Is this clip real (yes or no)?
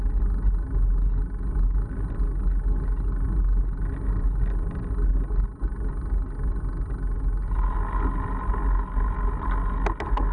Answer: yes